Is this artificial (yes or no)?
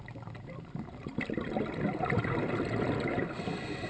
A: no